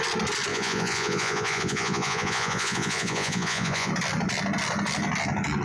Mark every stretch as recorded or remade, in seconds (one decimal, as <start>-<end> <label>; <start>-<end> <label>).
0.0-0.5 recorded; 0.5-3.9 remade; 3.9-5.6 recorded